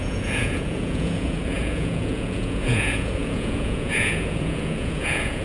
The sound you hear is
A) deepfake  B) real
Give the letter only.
A